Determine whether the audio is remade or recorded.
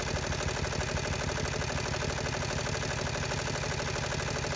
recorded